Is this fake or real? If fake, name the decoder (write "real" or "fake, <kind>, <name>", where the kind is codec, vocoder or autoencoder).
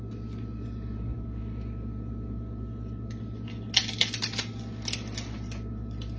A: real